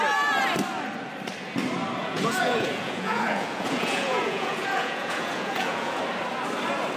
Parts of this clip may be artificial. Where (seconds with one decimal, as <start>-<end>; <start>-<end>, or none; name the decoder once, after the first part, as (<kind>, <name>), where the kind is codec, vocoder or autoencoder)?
2.0-6.0 (vocoder, Vocos)